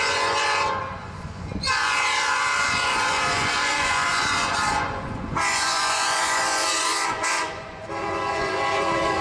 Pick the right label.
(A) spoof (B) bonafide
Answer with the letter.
A